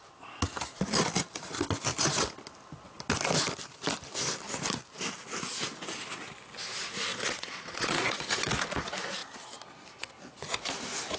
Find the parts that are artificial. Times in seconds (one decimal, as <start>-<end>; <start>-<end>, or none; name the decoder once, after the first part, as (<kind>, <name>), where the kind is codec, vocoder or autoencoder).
7.1-8.5 (vocoder, Vocos)